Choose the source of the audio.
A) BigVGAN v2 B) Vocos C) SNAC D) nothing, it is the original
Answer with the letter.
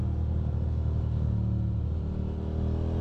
D